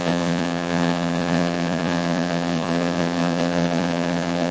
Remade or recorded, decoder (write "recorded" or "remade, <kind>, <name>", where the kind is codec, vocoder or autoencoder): remade, vocoder, Vocos